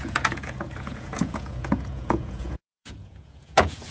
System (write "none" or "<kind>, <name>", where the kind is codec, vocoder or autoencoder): vocoder, Vocos